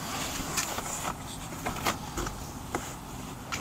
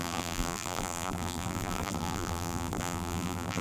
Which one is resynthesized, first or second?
second